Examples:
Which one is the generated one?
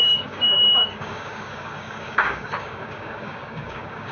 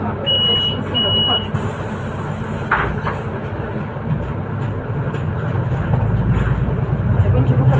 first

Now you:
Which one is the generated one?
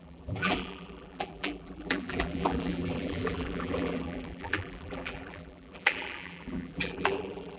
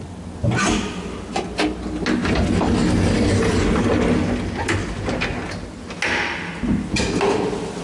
first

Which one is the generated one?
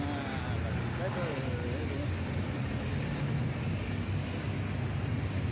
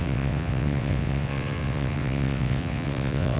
second